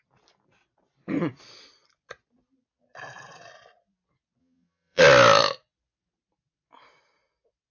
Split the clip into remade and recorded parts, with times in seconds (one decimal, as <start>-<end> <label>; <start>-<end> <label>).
0.0-4.4 recorded; 4.4-5.0 remade; 5.0-7.7 recorded